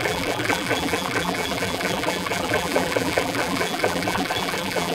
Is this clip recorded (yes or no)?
no